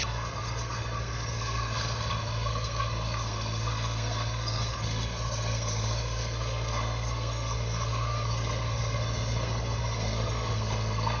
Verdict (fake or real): fake